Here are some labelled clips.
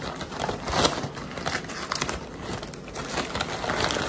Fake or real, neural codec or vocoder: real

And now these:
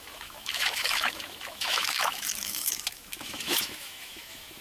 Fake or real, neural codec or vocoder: fake, autoencoder, DAC-VAE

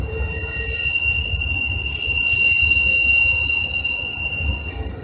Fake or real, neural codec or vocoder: real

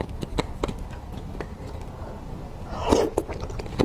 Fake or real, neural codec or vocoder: real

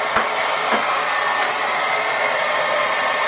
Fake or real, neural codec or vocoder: real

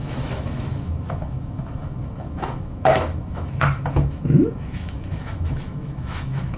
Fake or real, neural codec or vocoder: fake, autoencoder, DAC-VAE